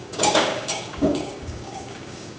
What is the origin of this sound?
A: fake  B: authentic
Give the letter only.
A